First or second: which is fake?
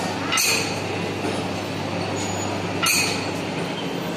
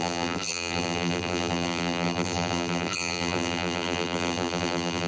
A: second